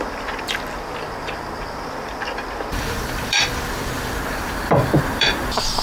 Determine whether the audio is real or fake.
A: fake